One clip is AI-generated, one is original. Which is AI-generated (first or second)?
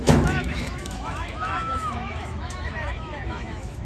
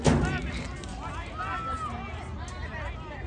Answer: first